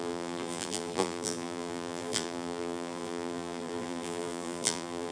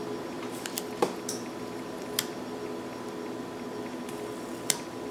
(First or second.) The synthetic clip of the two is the first